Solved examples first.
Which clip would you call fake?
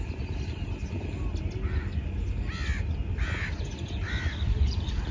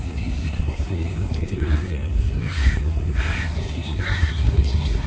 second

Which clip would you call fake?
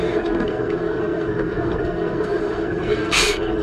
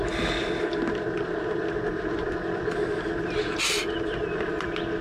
first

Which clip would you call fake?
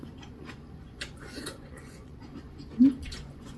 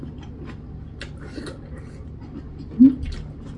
first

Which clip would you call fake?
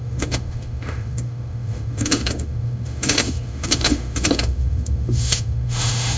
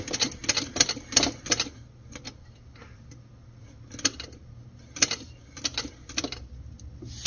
first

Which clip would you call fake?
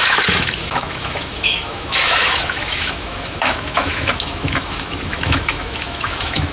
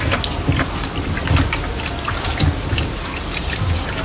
first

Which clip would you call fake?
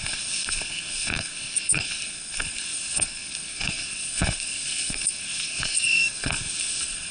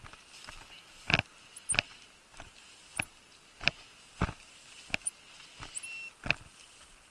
first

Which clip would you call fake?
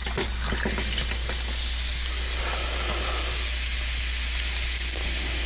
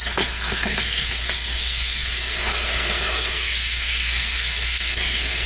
second